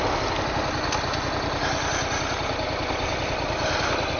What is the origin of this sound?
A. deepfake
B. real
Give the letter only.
B